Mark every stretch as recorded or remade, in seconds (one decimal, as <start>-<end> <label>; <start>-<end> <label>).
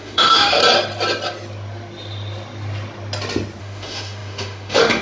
0.0-0.6 remade; 0.6-3.6 recorded; 3.6-5.0 remade